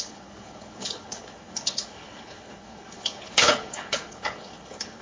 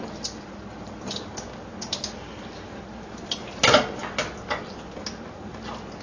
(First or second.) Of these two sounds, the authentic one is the second